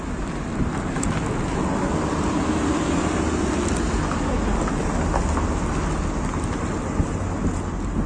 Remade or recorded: recorded